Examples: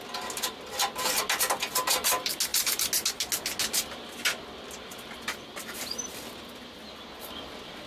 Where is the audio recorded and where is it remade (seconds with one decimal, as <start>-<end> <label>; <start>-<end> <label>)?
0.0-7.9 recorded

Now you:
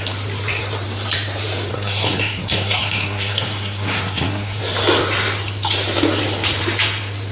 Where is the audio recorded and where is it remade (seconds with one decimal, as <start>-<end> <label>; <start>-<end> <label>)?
0.0-1.7 recorded; 1.7-4.6 remade; 4.6-7.3 recorded

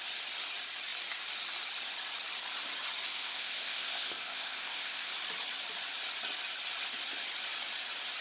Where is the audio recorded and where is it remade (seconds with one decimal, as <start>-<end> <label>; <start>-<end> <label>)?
0.0-3.1 recorded; 3.1-5.1 remade; 5.1-8.2 recorded